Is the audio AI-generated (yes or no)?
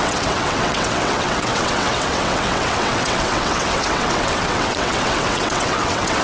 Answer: yes